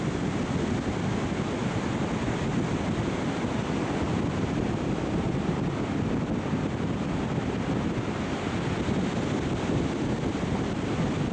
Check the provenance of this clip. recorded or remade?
recorded